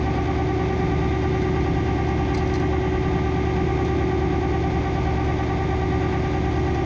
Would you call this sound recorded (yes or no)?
yes